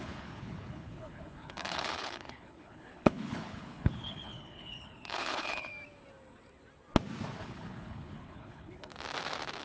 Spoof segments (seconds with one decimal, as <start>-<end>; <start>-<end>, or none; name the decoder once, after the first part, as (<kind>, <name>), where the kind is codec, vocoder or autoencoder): 0.0-5.7 (codec, HILCodec); 7.4-8.9